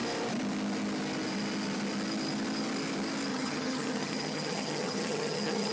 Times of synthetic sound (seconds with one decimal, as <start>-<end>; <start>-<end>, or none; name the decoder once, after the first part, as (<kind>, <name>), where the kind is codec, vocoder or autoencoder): 3.3-5.7 (vocoder, HiFi-GAN)